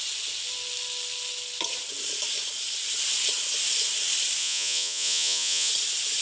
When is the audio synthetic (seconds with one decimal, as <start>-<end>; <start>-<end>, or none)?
4.4-5.7